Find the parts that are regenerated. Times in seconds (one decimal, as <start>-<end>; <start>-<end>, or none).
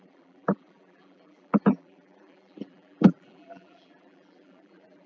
0.0-5.1